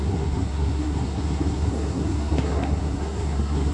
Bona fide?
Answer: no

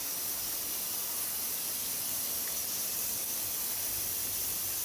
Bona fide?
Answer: yes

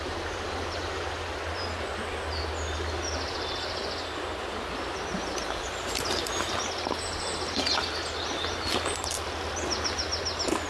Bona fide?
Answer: yes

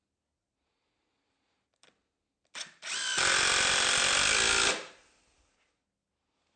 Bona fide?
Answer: yes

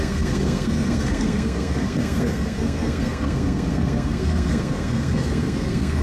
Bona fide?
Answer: no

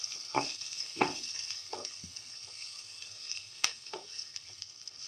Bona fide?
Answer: no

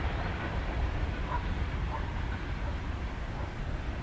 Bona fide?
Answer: yes